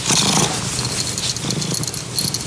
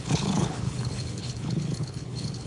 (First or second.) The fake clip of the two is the second